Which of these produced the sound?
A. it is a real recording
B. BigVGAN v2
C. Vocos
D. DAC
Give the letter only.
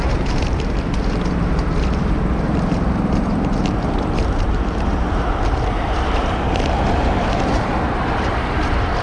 B